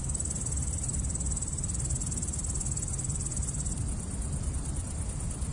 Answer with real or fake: fake